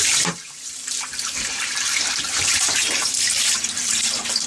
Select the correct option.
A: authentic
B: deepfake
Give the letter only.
B